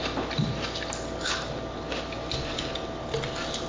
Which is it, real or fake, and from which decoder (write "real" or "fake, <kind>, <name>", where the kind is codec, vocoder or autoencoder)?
real